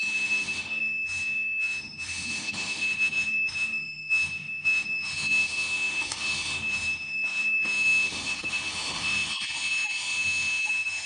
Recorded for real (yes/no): no